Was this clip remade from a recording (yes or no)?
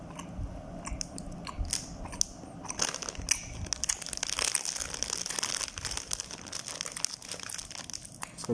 no